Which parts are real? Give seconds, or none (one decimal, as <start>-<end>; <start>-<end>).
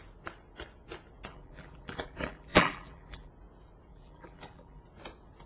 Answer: 0.0-1.3; 3.3-3.9; 4.8-5.5